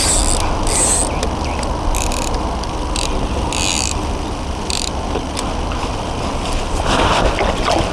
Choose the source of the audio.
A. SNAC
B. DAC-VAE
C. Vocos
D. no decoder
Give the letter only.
D